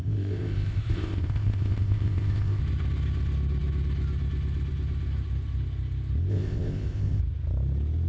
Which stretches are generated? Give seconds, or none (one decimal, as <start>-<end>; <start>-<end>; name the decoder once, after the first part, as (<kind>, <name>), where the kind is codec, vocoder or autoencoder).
0.0-2.6 (codec, ZipCodec); 6.3-7.2